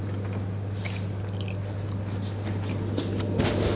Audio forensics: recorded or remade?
recorded